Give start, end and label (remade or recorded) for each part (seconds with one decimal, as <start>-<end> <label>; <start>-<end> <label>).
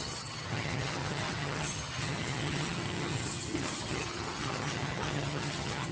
0.0-5.9 remade